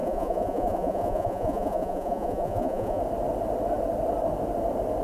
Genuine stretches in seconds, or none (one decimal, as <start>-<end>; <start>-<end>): 3.0-5.0